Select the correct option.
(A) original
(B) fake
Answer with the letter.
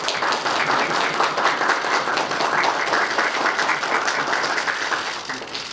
A